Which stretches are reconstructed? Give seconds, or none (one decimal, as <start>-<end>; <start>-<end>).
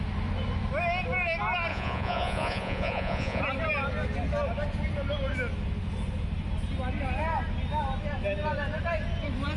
1.7-3.4